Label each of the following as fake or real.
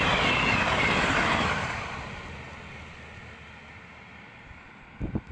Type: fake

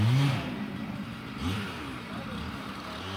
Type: fake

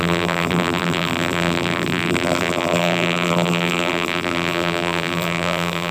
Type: fake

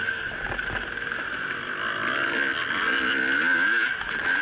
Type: real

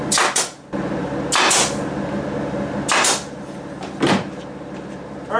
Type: real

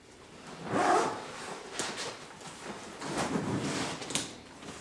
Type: real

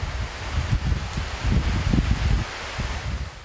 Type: real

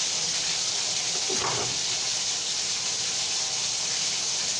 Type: real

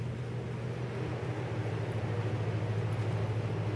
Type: real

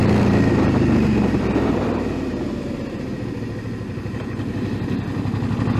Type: real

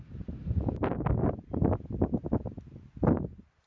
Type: real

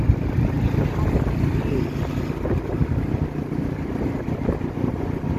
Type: real